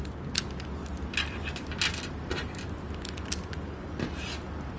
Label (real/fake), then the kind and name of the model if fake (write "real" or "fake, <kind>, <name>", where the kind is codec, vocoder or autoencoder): real